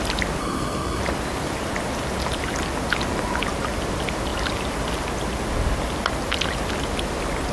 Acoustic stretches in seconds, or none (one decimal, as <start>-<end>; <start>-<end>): 0.0-0.4; 1.0-7.5